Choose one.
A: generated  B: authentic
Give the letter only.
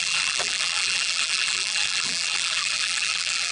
A